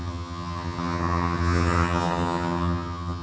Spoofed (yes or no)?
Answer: yes